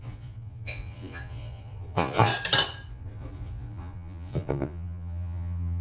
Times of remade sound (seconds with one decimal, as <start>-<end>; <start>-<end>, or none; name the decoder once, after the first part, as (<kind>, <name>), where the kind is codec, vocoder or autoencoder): 0.0-2.3 (vocoder, Vocos); 2.9-5.8